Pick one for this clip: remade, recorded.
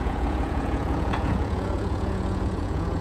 remade